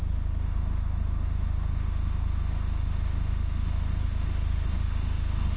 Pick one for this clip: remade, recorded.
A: remade